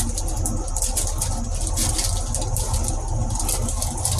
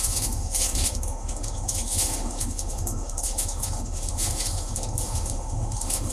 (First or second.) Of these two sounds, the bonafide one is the first